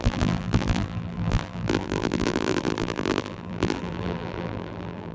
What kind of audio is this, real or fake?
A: fake